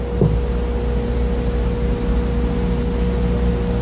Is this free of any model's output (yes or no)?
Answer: yes